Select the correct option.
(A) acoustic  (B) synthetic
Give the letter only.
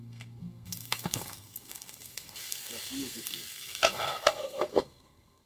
B